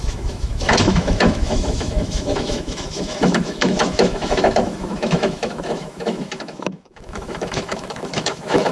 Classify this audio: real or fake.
fake